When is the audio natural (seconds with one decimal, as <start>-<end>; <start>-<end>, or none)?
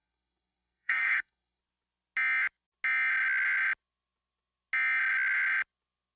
1.6-6.2